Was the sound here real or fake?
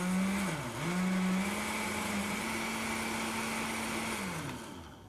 real